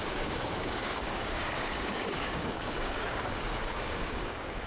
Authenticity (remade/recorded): remade